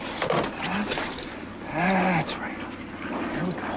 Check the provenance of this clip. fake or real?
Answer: real